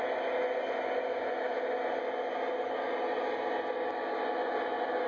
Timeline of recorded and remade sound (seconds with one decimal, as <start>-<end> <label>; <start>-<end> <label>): 0.0-5.1 recorded